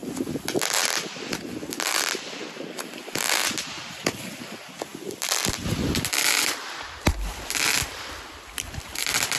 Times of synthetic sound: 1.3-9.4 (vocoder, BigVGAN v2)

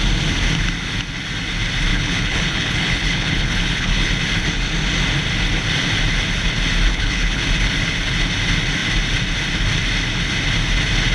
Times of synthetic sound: 1.9-4.1 (codec, HILCodec); 6.9-7.4

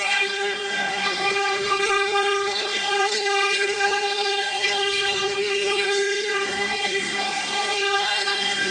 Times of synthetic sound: 0.0-8.7 (codec, SNAC)

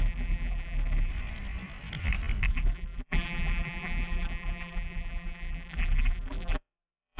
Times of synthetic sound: 0.0-1.1 (vocoder, BigVGAN v2); 2.5-7.2

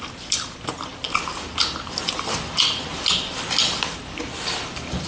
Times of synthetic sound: none

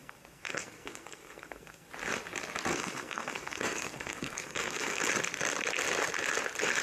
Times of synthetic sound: 0.0-1.9 (codec, SNAC); 2.7-5.0